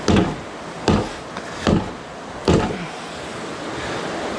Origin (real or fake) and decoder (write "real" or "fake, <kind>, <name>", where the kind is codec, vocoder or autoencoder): real